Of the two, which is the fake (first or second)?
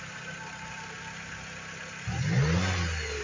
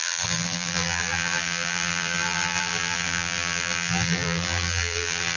second